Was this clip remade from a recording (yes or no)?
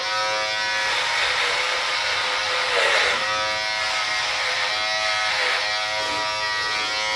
no